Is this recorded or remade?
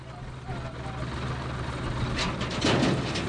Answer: recorded